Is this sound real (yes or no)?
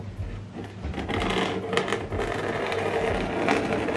yes